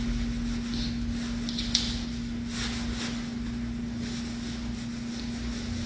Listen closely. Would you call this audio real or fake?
real